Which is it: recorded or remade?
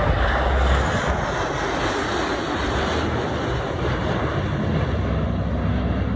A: recorded